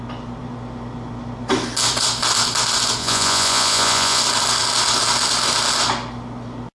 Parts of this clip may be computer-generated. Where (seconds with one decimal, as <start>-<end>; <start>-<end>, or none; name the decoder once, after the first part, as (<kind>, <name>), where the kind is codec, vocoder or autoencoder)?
3.0-4.2 (vocoder, Vocos)